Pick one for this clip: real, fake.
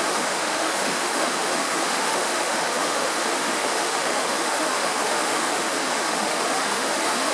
fake